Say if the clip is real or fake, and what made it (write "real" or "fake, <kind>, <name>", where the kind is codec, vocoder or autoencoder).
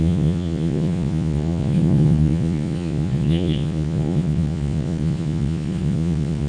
fake, vocoder, Vocos